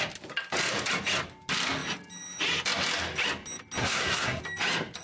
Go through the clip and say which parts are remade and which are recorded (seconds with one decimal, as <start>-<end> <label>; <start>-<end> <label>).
0.0-3.8 recorded; 3.8-4.4 remade; 4.4-5.0 recorded